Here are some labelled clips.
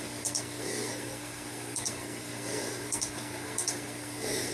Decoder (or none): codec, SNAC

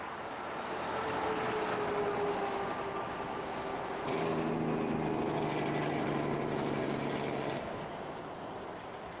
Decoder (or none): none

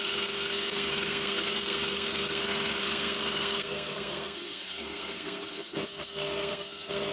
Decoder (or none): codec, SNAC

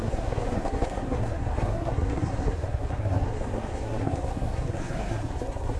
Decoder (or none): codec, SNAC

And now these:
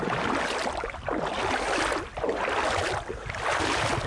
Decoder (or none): none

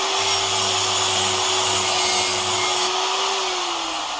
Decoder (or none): none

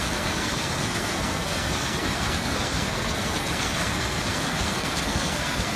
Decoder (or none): codec, SNAC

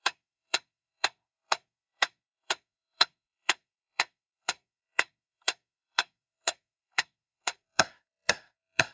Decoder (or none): codec, SNAC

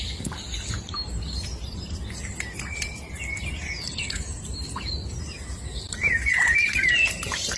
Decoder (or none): none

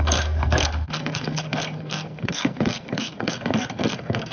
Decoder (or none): codec, SNAC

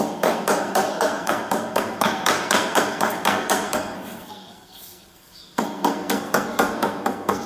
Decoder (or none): codec, SNAC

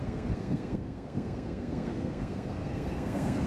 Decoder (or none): codec, SNAC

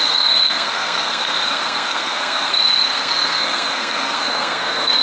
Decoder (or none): codec, SNAC